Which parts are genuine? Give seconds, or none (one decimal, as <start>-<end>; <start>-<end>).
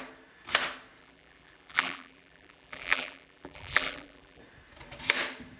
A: 0.0-1.0; 4.4-5.6